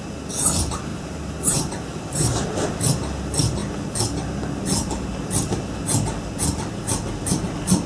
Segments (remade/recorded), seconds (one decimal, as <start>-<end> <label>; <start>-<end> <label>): 0.0-0.9 recorded; 0.9-2.4 remade; 2.4-7.9 recorded